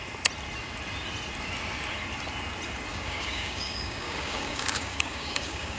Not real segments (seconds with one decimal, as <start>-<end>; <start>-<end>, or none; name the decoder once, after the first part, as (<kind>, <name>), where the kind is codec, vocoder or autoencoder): 2.9-5.8 (codec, DAC)